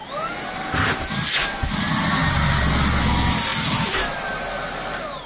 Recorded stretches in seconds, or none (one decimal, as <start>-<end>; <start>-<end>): 0.0-5.3